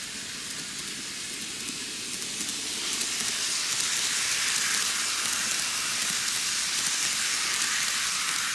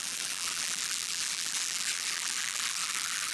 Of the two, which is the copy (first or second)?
second